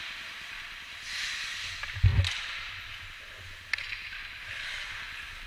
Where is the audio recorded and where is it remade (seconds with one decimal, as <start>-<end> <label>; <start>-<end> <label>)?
0.0-5.5 recorded